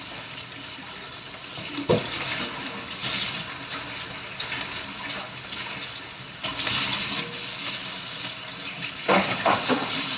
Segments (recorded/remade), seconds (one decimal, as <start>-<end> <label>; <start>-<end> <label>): 0.0-10.2 recorded